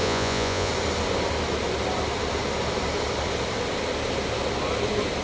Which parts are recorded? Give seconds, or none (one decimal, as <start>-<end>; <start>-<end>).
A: 0.7-5.2